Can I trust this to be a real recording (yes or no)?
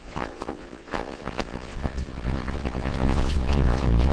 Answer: no